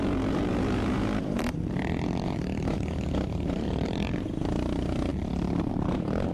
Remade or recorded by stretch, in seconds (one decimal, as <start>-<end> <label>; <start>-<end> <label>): 0.0-6.3 remade